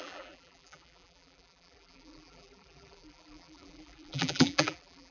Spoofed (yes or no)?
yes